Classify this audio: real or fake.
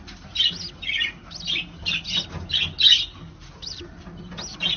real